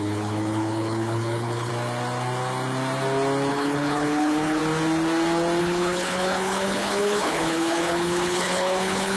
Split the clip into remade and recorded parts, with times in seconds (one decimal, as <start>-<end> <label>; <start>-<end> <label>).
0.0-1.7 remade; 1.7-3.5 recorded; 3.5-4.6 remade; 4.6-5.6 recorded; 5.6-9.2 remade